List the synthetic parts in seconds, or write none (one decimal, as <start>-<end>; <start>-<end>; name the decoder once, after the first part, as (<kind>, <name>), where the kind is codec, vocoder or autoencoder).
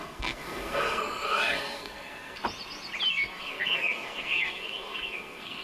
0.0-2.4 (codec, SNAC); 3.1-5.6